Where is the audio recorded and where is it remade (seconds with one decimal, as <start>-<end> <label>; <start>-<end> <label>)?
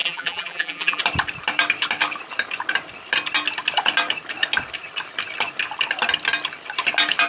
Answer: 0.0-1.0 remade; 1.0-7.3 recorded